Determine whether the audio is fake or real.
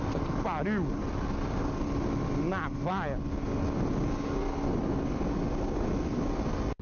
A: real